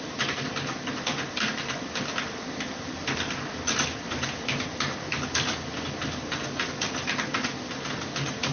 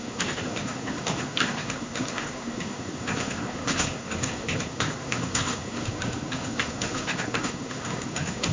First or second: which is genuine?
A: first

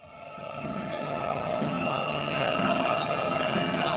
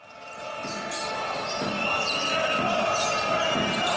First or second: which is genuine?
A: second